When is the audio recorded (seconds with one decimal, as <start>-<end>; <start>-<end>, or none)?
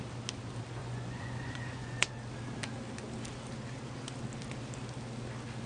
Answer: 0.0-0.8; 2.1-5.7